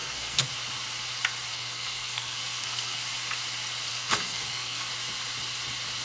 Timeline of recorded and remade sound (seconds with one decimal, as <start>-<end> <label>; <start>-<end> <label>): 0.0-0.5 remade; 0.5-1.5 recorded; 1.5-3.0 remade; 3.0-3.9 recorded; 3.9-4.9 remade; 4.9-6.0 recorded